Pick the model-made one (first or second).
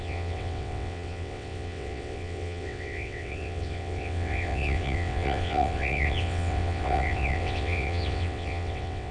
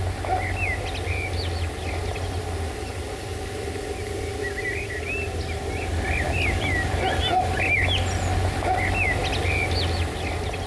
first